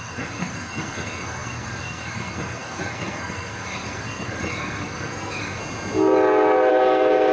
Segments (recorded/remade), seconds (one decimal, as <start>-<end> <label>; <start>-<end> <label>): 0.0-5.6 remade; 5.6-6.7 recorded; 6.7-7.3 remade